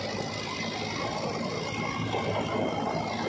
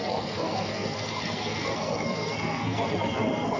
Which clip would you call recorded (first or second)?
first